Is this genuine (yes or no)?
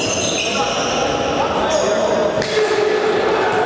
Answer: yes